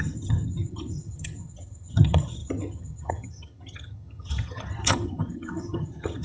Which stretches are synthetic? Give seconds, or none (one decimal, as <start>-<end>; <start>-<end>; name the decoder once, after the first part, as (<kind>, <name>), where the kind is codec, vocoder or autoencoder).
0.0-6.2 (vocoder, HiFi-GAN)